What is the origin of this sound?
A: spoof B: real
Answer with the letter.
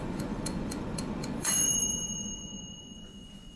A